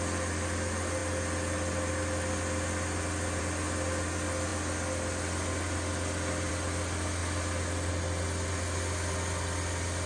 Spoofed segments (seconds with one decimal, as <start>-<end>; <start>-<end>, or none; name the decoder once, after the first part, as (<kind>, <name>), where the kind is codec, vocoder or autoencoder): none